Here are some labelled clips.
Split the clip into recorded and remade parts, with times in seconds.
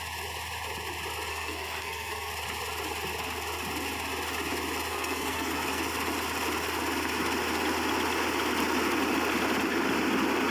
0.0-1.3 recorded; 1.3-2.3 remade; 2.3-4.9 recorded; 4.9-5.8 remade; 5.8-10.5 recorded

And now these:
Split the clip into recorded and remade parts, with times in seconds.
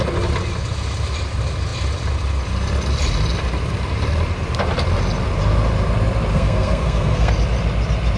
0.0-6.3 recorded; 6.3-7.3 remade; 7.3-8.2 recorded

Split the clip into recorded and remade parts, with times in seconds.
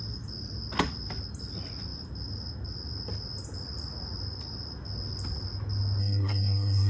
0.0-6.0 recorded; 6.0-6.9 remade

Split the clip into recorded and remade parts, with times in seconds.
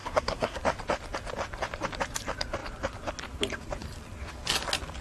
0.0-0.6 remade; 0.6-5.0 recorded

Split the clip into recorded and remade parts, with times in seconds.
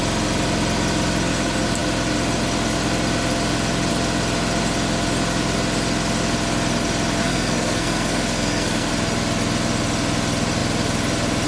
0.0-7.2 recorded; 7.2-8.9 remade; 8.9-11.5 recorded